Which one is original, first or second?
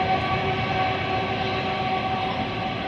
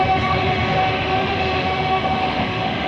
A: first